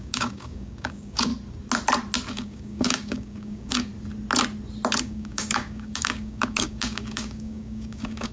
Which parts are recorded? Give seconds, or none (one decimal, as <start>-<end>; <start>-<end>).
1.3-2.3; 3.9-5.0